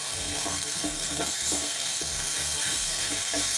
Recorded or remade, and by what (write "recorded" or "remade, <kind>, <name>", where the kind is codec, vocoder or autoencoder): remade, codec, SNAC